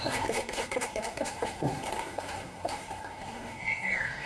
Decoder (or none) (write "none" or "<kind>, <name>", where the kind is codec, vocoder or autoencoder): codec, SNAC